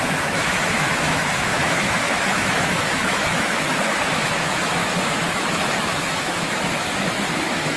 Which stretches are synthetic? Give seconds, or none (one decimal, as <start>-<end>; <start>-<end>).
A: 0.0-7.8